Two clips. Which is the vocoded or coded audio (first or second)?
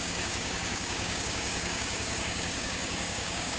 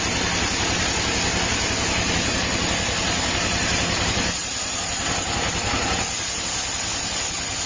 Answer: first